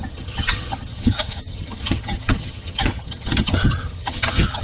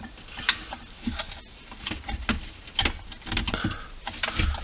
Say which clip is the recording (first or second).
second